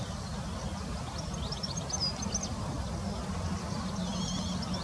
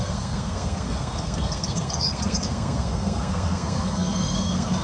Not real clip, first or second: second